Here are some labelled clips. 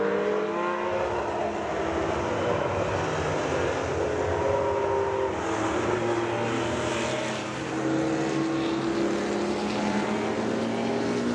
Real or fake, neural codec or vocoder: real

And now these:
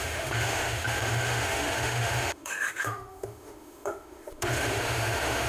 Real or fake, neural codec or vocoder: fake, autoencoder, DAC-VAE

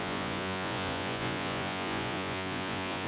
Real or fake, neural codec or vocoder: fake, vocoder, Vocos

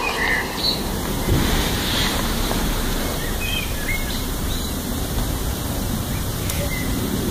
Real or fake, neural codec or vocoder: fake, vocoder, BigVGAN v2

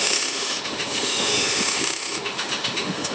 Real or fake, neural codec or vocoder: fake, autoencoder, DAC-VAE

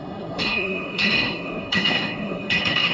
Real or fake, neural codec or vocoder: fake, codec, SNAC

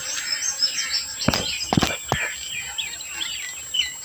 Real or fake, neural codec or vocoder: real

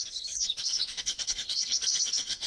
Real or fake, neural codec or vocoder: fake, codec, SNAC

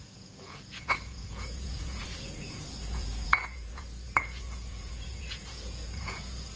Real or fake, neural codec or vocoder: fake, vocoder, Vocos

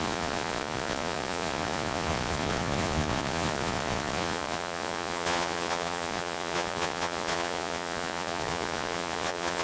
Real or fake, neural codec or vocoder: fake, vocoder, Vocos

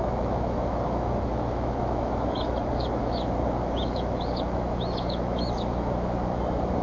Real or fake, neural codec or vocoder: fake, autoencoder, DAC-VAE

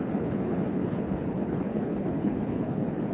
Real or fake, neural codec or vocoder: fake, codec, HILCodec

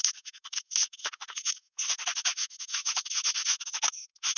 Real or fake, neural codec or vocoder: fake, autoencoder, DAC-VAE